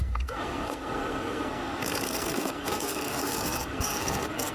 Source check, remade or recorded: remade